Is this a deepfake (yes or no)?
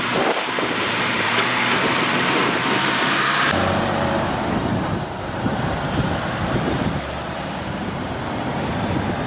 yes